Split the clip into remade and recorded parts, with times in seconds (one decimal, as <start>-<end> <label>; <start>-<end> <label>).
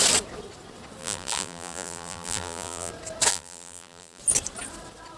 0.0-1.0 recorded; 1.0-2.9 remade; 2.9-3.3 recorded; 3.3-4.2 remade; 4.2-5.2 recorded